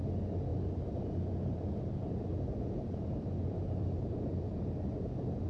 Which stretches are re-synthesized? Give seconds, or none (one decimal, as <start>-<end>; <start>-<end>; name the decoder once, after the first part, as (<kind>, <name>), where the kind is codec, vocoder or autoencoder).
none

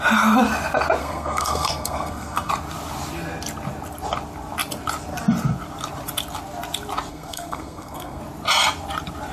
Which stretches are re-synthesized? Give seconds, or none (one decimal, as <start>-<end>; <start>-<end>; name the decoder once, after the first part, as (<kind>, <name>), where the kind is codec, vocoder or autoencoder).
1.0-2.5 (codec, SNAC); 7.1-8.2

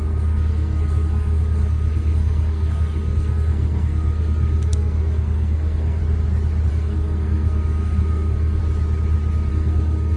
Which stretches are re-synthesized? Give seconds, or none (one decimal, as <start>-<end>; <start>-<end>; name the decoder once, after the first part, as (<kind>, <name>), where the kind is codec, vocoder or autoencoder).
0.0-6.0 (codec, SNAC); 6.7-8.6; 9.5-10.2

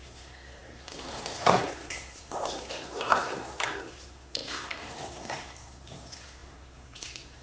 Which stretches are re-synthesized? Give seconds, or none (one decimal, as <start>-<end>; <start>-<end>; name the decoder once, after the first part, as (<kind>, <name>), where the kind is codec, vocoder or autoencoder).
0.0-7.4 (codec, SNAC)

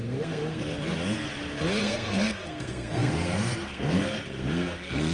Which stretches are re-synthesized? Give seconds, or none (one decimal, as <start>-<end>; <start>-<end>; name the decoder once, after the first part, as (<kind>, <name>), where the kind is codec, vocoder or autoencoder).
0.0-0.6 (codec, SNAC); 1.8-5.1

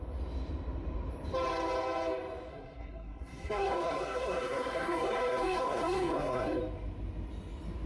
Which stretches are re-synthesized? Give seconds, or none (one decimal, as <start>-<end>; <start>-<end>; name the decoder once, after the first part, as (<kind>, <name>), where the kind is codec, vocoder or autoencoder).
2.5-6.6 (codec, SNAC)

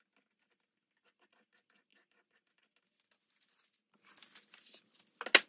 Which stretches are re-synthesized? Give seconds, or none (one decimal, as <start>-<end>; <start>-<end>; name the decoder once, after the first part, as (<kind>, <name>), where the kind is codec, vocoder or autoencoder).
none

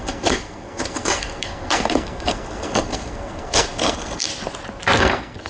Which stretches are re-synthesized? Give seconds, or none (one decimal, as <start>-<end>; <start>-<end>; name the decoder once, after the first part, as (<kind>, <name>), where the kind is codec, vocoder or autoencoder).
0.0-4.3 (codec, SNAC); 5.0-5.5